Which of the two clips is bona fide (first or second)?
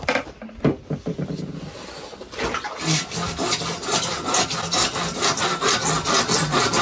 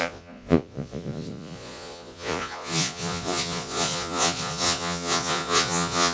first